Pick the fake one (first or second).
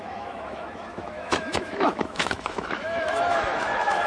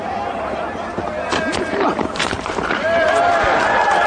first